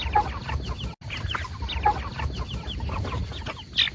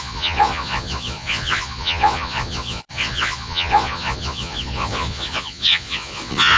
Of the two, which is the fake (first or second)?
second